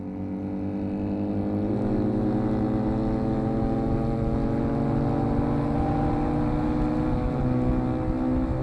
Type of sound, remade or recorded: recorded